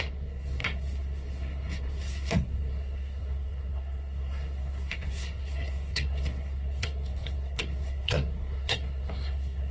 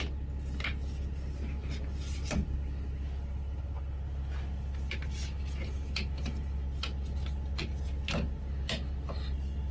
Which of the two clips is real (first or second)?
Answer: second